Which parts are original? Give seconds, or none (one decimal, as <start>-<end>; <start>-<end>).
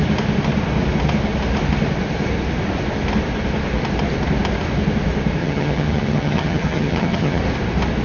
0.0-5.4; 7.4-8.0